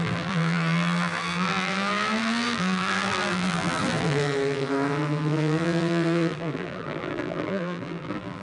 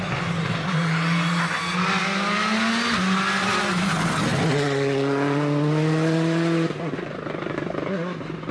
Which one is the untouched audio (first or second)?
second